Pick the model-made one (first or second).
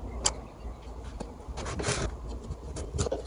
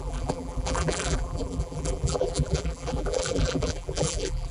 second